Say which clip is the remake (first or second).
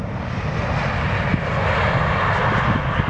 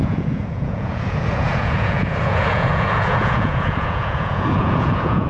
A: second